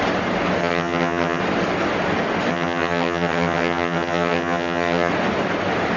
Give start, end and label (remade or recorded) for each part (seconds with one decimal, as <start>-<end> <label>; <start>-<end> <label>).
0.0-0.6 recorded; 0.6-1.4 remade; 1.4-2.5 recorded; 2.5-5.1 remade; 5.1-6.0 recorded